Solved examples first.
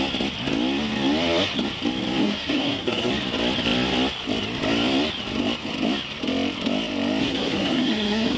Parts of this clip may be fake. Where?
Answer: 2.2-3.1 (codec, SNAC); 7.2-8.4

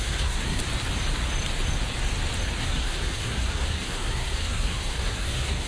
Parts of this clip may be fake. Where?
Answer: 0.0-0.6 (codec, SNAC); 2.6-5.7

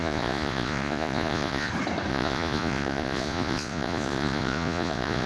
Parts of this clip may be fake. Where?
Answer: 0.0-1.7 (vocoder, Vocos); 2.1-5.3

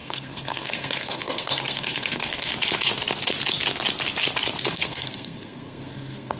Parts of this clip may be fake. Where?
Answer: 0.0-2.5 (codec, SNAC); 4.7-6.4

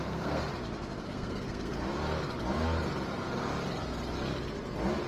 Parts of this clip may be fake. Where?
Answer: 0.0-0.4 (codec, SNAC); 1.0-1.7

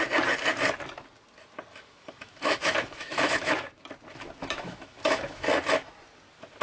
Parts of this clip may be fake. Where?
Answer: 1.7-3.8 (autoencoder, DAC-VAE); 4.4-5.5

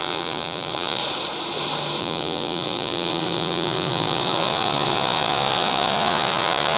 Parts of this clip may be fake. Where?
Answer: 0.0-1.0 (vocoder, Vocos); 2.0-6.8

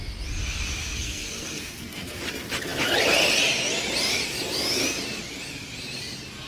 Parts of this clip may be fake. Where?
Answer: 0.8-2.2 (codec, SNAC)